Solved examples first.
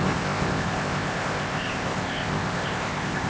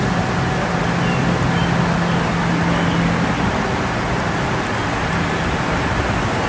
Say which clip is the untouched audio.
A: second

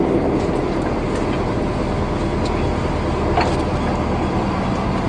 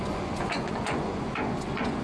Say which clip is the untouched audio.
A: first